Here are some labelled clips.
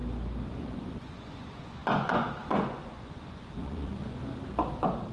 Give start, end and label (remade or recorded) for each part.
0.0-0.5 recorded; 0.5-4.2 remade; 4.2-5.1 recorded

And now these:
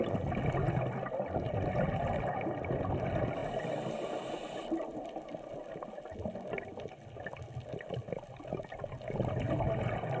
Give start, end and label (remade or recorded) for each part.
0.0-10.2 recorded

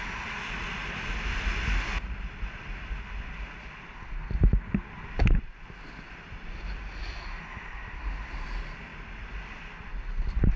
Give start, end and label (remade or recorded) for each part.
0.0-10.6 recorded

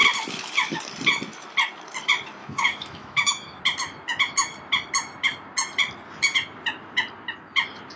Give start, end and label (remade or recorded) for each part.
0.0-2.4 recorded; 2.4-3.6 remade; 3.6-8.0 recorded